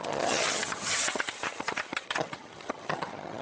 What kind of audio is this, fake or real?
fake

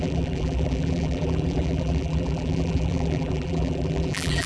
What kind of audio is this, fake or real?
fake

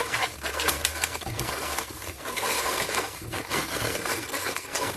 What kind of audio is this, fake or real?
fake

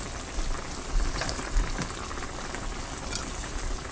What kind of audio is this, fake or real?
real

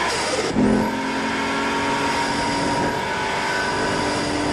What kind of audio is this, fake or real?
real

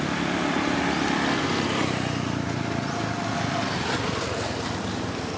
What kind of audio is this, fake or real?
real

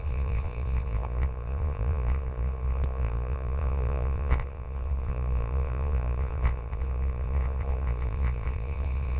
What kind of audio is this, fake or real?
fake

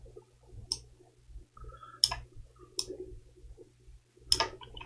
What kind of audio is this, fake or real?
real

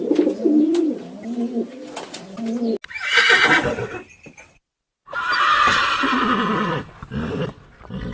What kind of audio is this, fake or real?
real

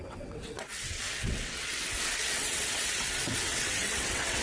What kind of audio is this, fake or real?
fake